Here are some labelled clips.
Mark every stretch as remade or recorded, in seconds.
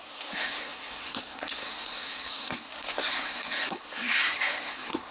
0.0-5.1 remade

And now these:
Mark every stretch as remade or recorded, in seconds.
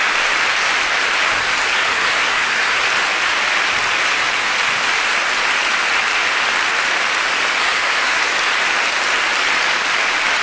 0.0-1.8 recorded; 1.8-2.8 remade; 2.8-7.6 recorded; 7.6-8.2 remade; 8.2-10.4 recorded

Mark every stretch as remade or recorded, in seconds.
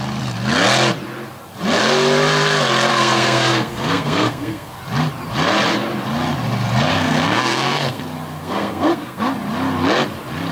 0.0-2.9 recorded; 2.9-4.8 remade; 4.8-6.9 recorded; 6.9-8.0 remade; 8.0-8.4 recorded; 8.4-9.3 remade; 9.3-10.5 recorded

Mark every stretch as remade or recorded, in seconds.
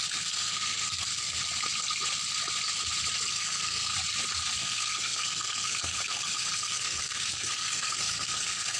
0.0-1.4 remade; 1.4-3.3 recorded; 3.3-3.9 remade; 3.9-4.6 recorded; 4.6-8.8 remade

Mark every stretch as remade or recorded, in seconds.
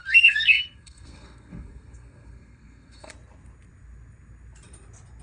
0.0-3.1 remade; 3.1-5.2 recorded